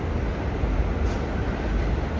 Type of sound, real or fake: real